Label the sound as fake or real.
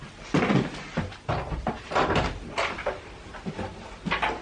real